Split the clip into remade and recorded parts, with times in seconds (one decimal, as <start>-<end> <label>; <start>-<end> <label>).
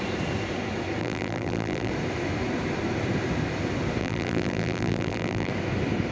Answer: 0.0-1.0 recorded; 1.0-1.9 remade; 1.9-4.0 recorded; 4.0-5.5 remade; 5.5-6.1 recorded